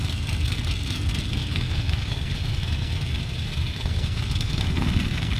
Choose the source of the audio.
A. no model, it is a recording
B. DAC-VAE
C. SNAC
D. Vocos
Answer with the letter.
C